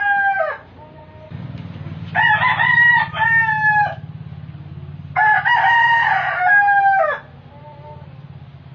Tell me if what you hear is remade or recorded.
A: recorded